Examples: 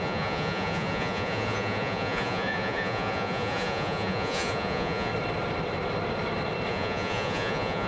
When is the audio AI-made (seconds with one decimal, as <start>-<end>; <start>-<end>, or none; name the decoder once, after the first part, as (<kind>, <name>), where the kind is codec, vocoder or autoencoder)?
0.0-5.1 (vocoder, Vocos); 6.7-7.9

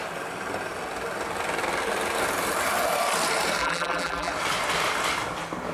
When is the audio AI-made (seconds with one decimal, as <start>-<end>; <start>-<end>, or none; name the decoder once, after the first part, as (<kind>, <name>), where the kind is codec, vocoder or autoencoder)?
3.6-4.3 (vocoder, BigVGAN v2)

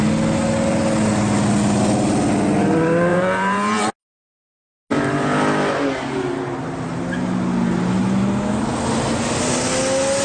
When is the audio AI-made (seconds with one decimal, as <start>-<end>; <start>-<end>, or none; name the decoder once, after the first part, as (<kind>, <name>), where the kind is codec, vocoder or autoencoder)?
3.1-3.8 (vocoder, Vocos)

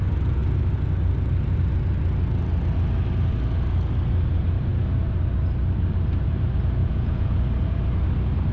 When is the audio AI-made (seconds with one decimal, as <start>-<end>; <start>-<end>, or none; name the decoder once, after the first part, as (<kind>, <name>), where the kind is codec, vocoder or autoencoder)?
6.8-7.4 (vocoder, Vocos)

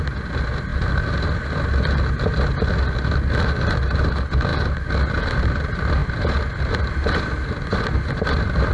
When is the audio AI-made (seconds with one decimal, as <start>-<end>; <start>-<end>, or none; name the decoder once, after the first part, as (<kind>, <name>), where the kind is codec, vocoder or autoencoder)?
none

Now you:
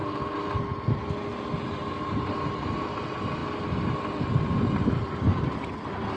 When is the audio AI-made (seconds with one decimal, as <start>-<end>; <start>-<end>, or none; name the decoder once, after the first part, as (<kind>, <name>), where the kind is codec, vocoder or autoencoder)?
none